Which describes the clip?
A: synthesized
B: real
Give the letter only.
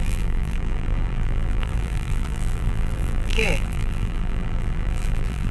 A